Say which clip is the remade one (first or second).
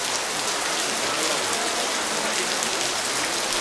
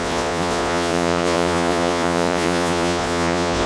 second